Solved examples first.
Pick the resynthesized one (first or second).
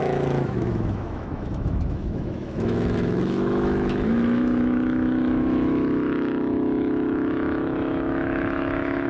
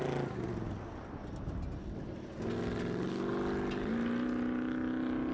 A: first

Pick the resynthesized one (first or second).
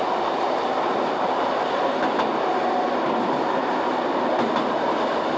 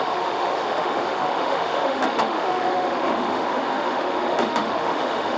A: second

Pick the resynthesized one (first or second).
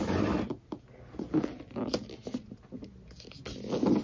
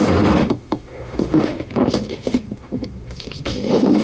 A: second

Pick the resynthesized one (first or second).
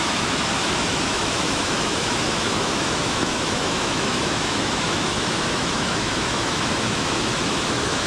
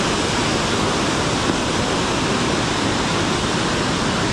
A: first